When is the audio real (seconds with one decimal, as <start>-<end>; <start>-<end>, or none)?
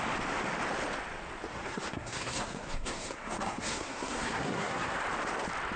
0.0-1.5; 5.0-5.8